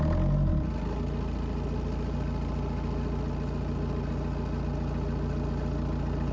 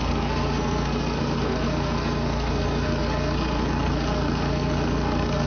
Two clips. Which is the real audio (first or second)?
first